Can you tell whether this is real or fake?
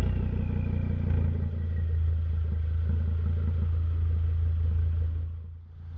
real